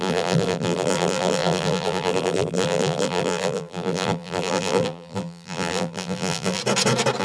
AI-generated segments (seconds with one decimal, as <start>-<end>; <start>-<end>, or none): 0.0-6.6